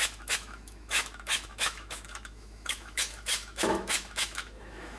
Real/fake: fake